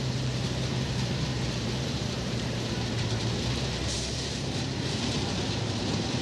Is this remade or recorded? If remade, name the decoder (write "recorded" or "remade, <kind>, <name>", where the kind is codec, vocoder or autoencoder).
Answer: remade, vocoder, BigVGAN v2